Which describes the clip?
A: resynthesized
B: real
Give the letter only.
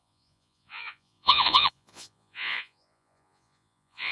A